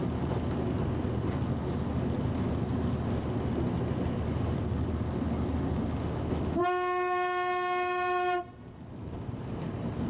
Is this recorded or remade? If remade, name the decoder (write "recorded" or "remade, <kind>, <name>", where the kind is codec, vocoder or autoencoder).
recorded